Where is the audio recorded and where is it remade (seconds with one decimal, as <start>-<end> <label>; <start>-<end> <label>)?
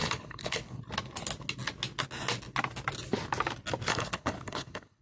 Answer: 0.0-0.8 remade; 0.8-3.9 recorded; 3.9-5.0 remade